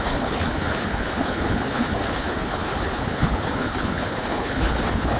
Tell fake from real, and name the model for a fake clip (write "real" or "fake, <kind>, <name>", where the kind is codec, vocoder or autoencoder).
fake, codec, HILCodec